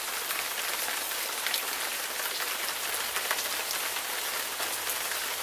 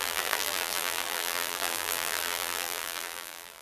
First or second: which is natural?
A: first